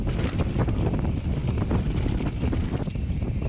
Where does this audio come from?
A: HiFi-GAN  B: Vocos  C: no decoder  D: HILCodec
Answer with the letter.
C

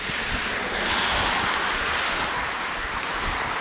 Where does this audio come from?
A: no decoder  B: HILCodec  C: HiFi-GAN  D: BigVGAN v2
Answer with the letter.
A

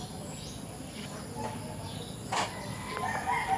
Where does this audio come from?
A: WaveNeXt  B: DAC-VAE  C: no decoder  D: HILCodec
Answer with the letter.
C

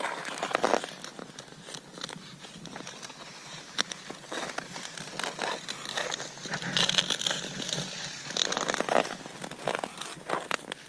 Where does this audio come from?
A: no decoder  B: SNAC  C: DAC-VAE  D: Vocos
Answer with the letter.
A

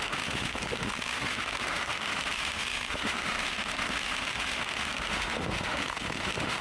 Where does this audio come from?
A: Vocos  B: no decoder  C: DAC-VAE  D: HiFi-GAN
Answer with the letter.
C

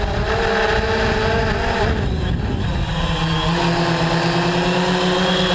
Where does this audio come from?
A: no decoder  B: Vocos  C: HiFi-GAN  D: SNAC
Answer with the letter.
A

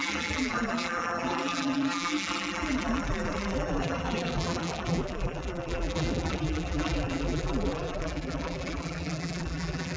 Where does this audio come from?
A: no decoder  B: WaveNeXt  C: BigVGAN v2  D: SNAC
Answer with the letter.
C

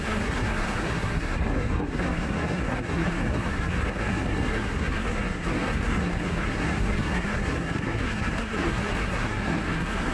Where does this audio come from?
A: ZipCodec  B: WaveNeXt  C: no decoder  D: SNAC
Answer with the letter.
D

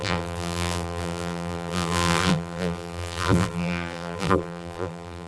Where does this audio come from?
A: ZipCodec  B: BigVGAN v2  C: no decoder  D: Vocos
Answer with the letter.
B